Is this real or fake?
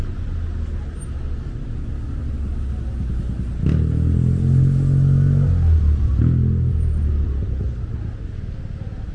real